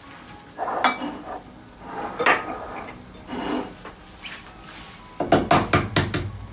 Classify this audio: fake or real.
real